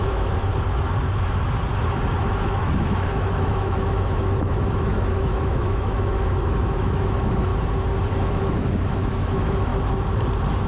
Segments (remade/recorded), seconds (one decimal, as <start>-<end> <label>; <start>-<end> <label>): 0.0-0.5 remade; 0.5-2.1 recorded; 2.1-7.5 remade; 7.5-8.1 recorded; 8.1-9.7 remade; 9.7-10.7 recorded